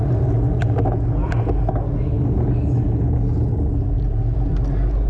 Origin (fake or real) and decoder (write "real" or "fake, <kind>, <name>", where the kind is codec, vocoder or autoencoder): real